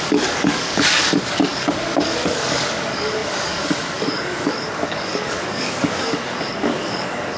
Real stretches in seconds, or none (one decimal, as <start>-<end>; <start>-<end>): none